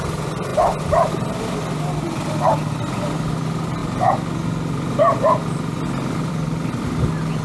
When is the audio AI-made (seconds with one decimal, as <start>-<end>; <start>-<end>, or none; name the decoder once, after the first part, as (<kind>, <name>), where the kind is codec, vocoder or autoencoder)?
none